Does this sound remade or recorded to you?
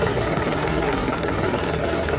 remade